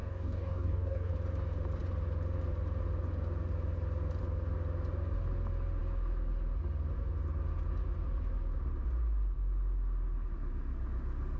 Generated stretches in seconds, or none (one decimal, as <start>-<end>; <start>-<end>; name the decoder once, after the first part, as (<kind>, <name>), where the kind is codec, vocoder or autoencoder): 0.0-1.1 (codec, DAC)